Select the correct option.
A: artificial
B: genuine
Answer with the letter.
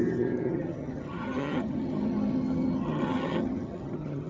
A